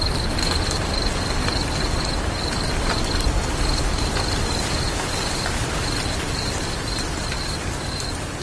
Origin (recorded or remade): recorded